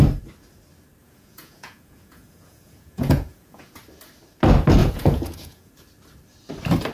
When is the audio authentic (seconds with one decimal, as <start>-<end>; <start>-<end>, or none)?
0.0-1.0; 3.8-4.8; 5.7-6.9

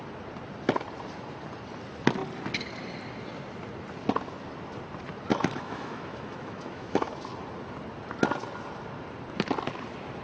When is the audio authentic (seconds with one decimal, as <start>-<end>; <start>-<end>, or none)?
0.0-5.3; 7.1-10.2

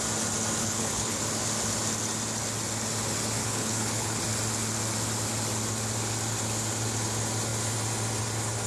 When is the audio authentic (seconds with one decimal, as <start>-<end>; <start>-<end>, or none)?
0.0-0.6; 1.2-3.4; 4.2-8.7

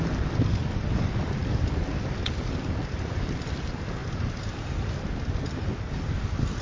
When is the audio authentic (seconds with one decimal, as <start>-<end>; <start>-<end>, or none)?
0.0-6.6

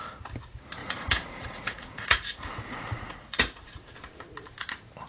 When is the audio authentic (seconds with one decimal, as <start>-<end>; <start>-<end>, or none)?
0.0-0.8; 3.9-5.1

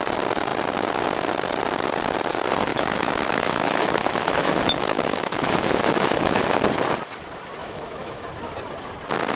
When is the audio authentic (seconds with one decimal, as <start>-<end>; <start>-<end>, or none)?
0.0-2.7; 6.4-7.6; 8.3-9.3

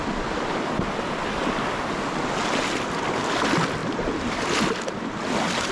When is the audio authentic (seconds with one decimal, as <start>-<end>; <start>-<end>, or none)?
0.0-5.7